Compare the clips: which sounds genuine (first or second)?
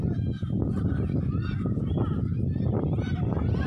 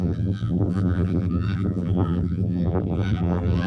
first